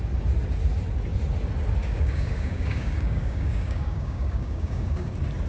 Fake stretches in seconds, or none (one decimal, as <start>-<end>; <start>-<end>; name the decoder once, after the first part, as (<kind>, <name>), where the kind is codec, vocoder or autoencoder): 1.8-5.1 (codec, DAC)